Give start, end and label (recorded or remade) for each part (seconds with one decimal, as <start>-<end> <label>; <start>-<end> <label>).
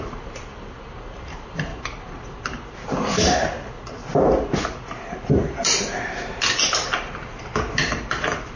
0.0-1.7 remade; 1.7-5.3 recorded; 5.3-7.5 remade; 7.5-8.6 recorded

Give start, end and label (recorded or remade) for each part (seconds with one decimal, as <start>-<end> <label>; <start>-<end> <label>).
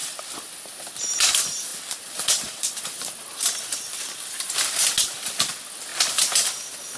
0.0-7.0 recorded